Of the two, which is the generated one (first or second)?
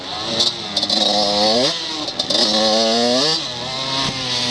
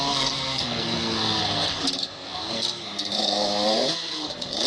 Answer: second